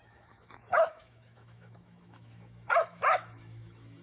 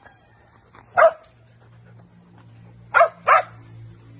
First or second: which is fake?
first